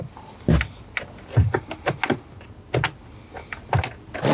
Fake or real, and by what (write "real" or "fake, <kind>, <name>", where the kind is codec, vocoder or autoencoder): real